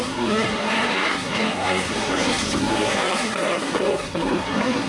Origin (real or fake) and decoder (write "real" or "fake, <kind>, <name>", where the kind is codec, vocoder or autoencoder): fake, codec, SNAC